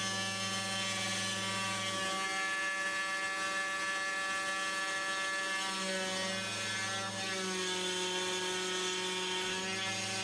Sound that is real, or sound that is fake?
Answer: real